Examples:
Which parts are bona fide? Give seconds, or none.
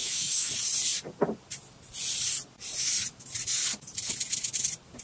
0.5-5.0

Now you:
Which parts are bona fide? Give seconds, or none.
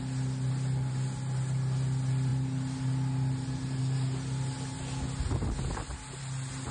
0.0-6.7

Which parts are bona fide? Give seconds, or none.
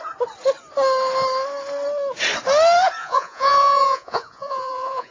0.0-3.0